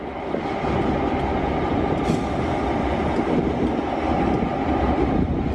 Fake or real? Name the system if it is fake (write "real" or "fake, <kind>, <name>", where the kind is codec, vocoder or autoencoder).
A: real